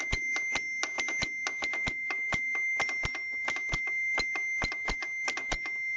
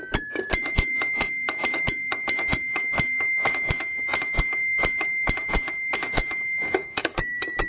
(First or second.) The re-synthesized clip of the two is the second